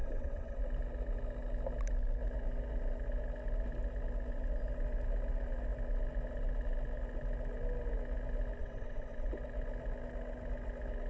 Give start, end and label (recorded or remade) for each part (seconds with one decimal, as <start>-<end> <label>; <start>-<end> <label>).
0.0-0.6 remade; 0.6-8.6 recorded; 8.6-9.3 remade; 9.3-11.1 recorded